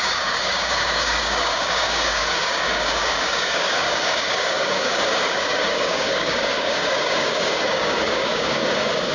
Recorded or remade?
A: remade